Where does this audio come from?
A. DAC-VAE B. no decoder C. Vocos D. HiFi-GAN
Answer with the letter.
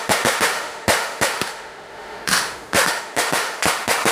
A